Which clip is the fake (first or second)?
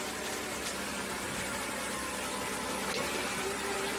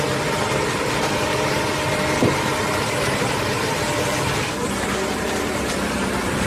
second